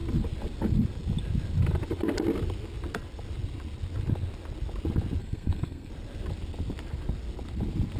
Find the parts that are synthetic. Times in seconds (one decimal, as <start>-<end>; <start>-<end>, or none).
5.2-5.9